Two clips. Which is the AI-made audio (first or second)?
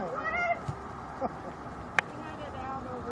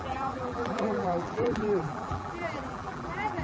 second